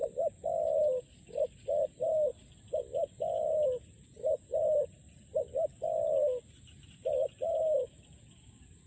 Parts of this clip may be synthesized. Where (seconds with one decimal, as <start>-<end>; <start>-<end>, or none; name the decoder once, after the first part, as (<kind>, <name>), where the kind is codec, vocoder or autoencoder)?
none